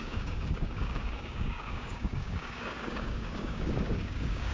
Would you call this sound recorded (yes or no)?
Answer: no